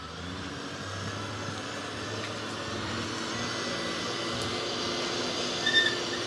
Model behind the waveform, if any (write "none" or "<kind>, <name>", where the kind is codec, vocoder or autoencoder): none